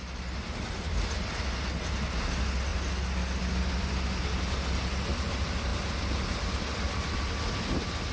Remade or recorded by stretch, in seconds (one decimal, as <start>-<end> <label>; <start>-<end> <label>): 0.0-8.1 recorded